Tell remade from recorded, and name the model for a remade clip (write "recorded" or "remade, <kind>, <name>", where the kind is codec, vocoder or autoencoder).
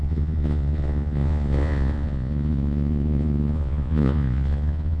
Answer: remade, vocoder, Vocos